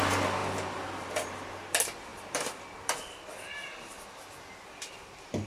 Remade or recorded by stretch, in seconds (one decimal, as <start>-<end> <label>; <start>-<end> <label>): 0.0-5.5 recorded